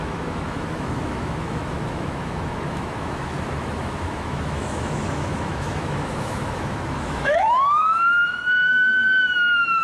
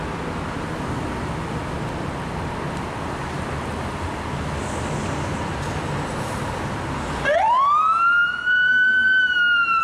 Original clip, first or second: second